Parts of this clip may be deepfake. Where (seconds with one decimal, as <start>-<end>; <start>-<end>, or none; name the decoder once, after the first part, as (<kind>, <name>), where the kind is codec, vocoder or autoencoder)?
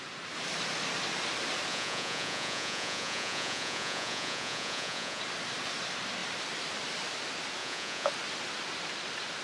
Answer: 1.7-5.2 (vocoder, Vocos); 7.6-8.1